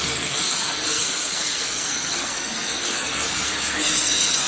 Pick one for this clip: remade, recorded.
remade